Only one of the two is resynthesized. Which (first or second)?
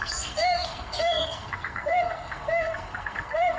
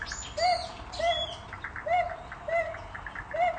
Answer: first